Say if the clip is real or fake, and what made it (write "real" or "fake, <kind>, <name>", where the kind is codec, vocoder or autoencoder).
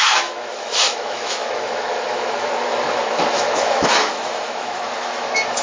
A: fake, autoencoder, DAC-VAE